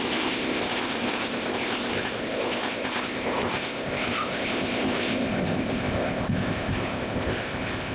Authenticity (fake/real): fake